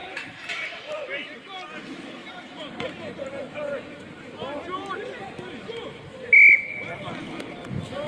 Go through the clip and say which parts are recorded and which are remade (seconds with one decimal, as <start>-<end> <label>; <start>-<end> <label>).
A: 0.0-1.5 remade; 1.5-2.2 recorded; 2.2-6.0 remade; 6.0-8.1 recorded